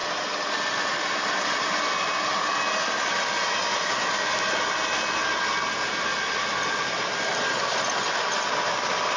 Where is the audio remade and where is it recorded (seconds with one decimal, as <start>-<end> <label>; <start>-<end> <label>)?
0.0-9.2 recorded